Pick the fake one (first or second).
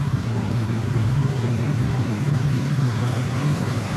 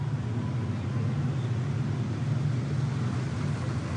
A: first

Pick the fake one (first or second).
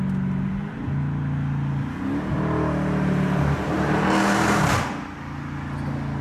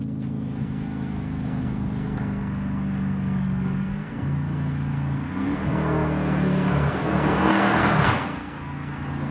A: second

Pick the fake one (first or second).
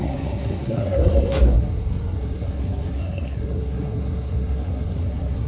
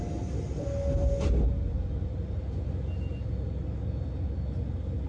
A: first